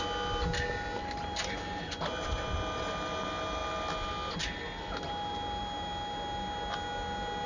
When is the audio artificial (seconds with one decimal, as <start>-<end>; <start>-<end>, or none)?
none